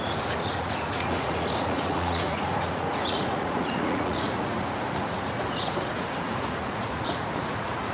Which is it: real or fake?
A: fake